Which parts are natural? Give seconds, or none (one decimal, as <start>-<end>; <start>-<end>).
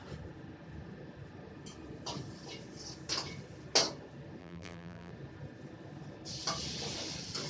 0.0-4.4; 5.1-7.5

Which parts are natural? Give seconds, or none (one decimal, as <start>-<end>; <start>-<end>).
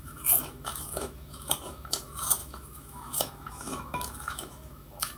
none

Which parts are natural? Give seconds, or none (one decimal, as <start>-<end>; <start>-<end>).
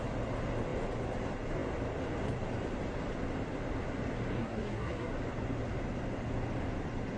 0.0-4.3; 5.1-7.2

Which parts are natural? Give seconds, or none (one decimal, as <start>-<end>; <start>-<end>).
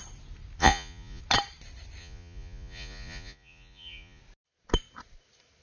0.0-0.6; 1.2-2.0; 4.2-5.6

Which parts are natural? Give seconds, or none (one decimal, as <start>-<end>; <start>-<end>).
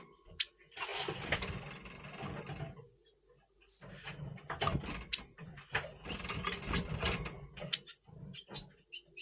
0.0-9.2